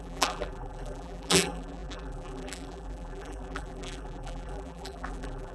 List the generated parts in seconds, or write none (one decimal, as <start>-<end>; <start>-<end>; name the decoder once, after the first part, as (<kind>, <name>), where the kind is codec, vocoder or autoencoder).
0.0-5.5 (vocoder, BigVGAN v2)